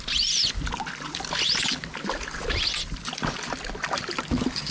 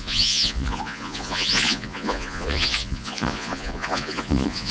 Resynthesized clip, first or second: second